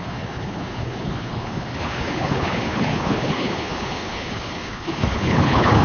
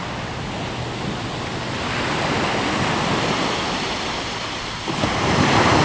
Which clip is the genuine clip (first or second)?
second